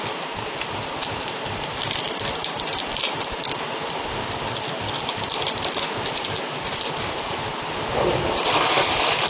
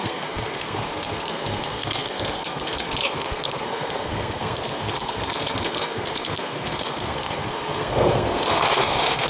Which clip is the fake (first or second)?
second